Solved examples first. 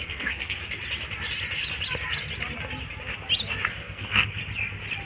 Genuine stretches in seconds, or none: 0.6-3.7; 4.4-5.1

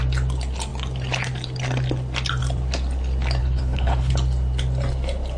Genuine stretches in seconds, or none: 0.0-3.4; 4.1-5.4

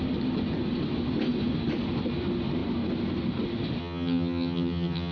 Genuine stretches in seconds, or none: 0.0-3.8

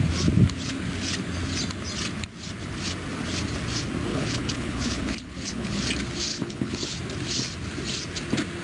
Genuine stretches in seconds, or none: 0.0-4.1; 5.8-6.3; 7.0-8.6

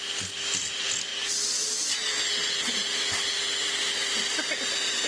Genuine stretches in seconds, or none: 0.0-5.1

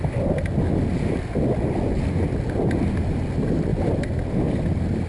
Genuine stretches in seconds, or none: 0.0-5.1

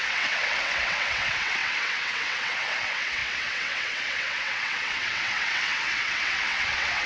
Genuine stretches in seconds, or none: none

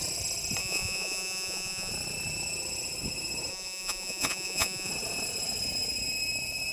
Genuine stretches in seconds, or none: 0.0-0.6; 1.9-3.5; 4.9-6.7